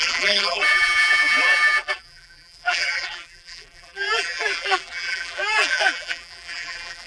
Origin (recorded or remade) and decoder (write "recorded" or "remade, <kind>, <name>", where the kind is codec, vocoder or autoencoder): remade, vocoder, BigVGAN v2